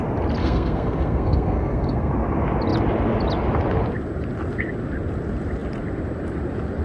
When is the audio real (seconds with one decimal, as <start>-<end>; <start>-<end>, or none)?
0.0-0.4; 2.1-6.8